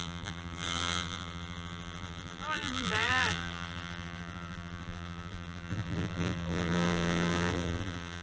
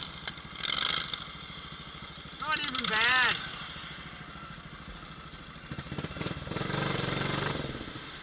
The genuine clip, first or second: second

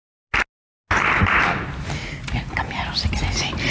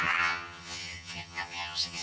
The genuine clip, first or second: first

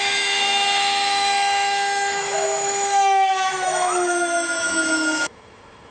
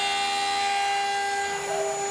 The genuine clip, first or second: second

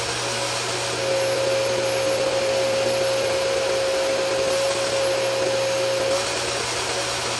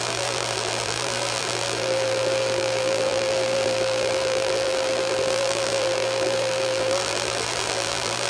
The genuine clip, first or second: first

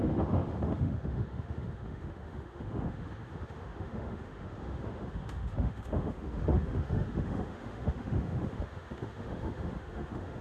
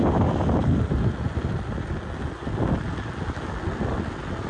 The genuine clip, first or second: second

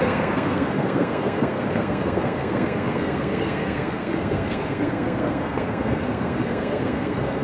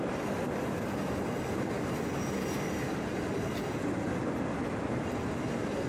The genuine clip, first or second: second